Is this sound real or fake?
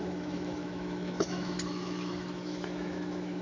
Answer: fake